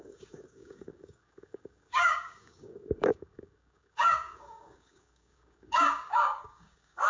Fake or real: fake